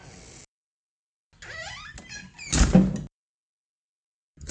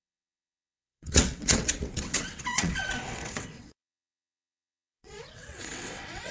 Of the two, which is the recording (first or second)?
first